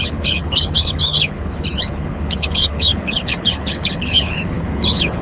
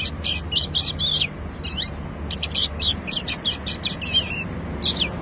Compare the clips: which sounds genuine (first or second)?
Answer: second